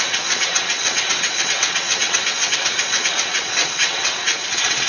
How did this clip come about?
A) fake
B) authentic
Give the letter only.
A